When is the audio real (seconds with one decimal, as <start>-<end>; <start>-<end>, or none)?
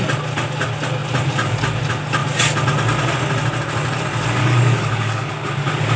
0.0-4.4; 5.3-6.0